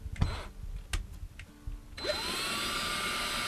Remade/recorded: recorded